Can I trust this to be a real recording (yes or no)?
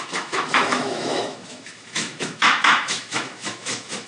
no